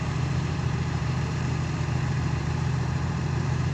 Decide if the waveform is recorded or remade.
remade